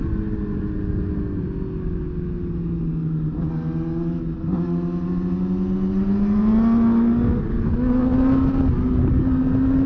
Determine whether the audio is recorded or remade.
recorded